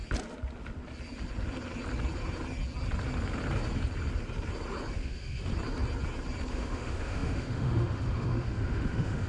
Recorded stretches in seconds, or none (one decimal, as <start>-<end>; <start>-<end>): 0.0-4.9; 5.5-6.5